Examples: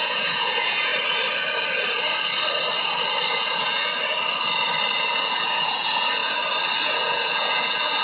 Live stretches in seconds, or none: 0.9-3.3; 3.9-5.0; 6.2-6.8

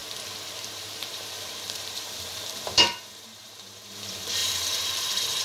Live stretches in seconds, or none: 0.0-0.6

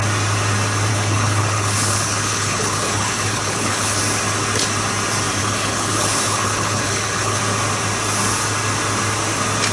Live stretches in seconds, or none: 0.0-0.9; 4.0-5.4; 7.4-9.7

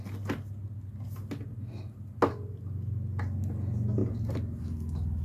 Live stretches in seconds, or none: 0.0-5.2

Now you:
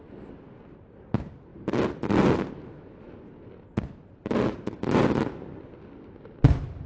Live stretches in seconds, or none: 0.0-6.9

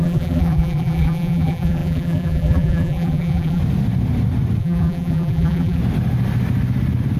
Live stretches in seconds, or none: 3.6-4.6; 5.8-7.2

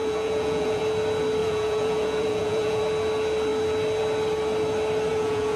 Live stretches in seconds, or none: 0.8-1.4; 2.8-5.1